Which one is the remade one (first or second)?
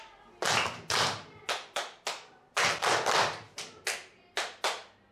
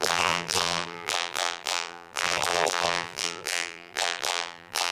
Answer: second